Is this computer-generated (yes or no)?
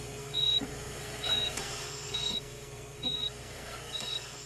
yes